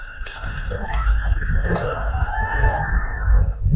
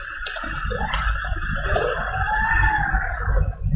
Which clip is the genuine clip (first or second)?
second